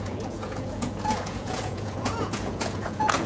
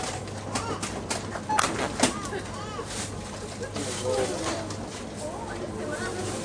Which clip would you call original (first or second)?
second